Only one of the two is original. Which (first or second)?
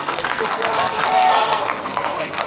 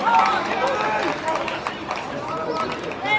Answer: second